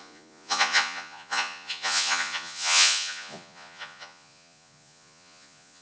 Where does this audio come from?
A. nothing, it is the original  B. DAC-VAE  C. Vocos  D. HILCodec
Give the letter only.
C